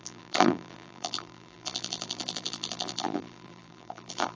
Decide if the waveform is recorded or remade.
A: remade